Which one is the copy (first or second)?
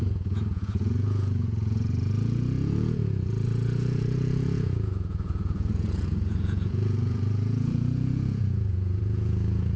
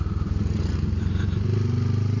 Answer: first